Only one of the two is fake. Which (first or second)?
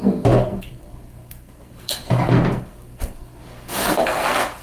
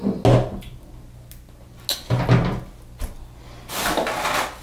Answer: first